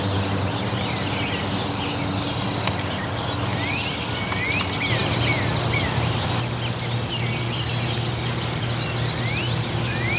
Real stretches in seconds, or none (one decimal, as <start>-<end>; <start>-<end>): 0.0-10.2